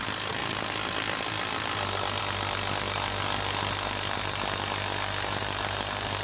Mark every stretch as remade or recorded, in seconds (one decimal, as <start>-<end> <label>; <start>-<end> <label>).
0.0-6.2 recorded